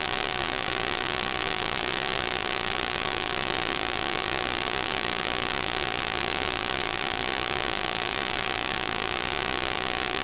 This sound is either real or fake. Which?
fake